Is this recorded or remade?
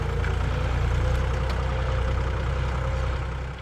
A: recorded